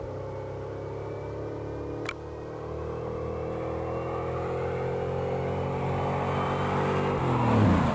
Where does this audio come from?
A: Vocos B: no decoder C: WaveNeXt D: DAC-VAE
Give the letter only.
B